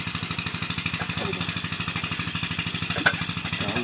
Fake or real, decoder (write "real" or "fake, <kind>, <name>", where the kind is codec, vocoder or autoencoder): real